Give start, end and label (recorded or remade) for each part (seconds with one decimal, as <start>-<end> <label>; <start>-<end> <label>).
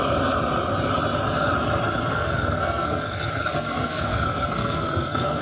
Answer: 0.0-2.1 recorded; 2.1-5.4 remade